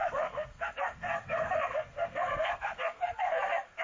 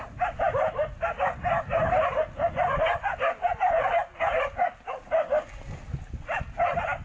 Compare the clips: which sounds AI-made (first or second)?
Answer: first